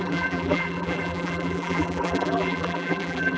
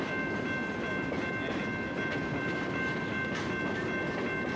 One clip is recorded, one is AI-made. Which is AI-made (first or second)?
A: first